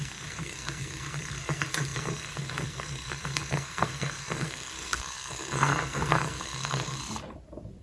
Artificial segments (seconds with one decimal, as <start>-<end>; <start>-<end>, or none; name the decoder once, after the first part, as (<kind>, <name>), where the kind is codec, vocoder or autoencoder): 0.0-7.0 (codec, SNAC)